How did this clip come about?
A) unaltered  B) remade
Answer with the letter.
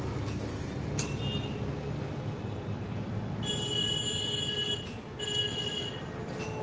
A